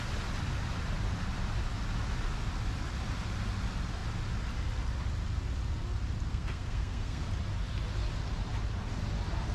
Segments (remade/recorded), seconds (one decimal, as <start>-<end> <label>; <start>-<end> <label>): 0.0-6.3 recorded; 6.3-7.2 remade; 7.2-9.5 recorded